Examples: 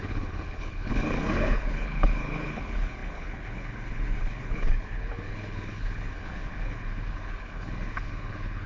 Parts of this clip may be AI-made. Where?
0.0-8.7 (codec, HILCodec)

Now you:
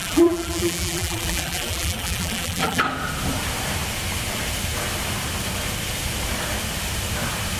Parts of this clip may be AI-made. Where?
0.0-2.8 (vocoder, BigVGAN v2)